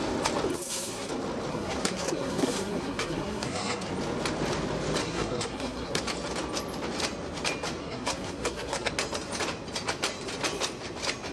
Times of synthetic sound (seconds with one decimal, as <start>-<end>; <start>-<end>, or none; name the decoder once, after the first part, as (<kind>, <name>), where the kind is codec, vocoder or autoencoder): 0.5-1.1 (codec, SNAC); 1.5-3.9; 5.0-6.0; 7.8-8.9